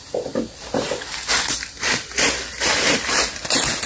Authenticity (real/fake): real